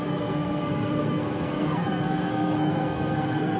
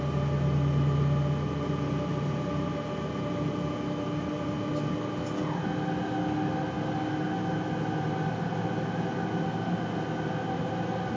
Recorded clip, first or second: second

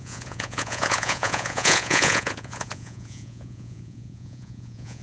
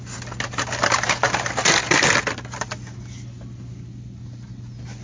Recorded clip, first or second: second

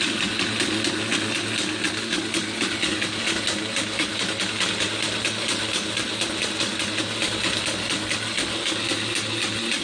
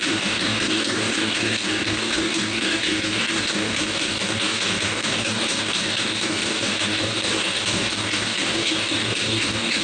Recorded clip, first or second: first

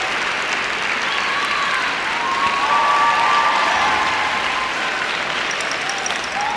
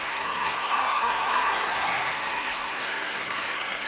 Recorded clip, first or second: first